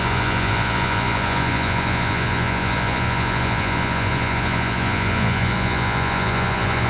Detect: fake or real fake